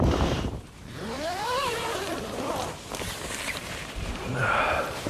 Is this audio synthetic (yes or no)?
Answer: yes